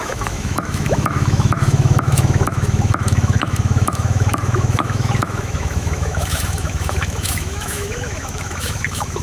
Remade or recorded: remade